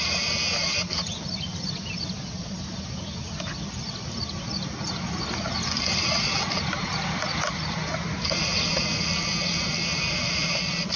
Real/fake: real